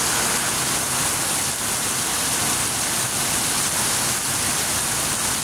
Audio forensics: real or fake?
real